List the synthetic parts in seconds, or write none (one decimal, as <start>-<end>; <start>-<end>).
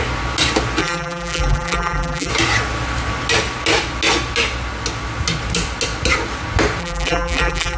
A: 0.8-2.3; 6.8-7.8